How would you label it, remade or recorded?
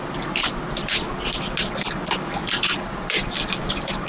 recorded